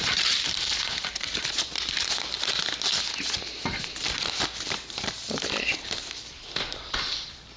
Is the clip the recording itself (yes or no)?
no